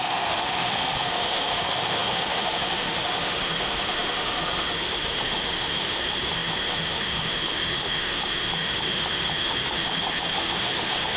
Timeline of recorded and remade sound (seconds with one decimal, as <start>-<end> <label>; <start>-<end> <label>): 0.0-11.2 remade